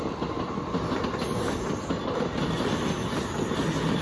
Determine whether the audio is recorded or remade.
recorded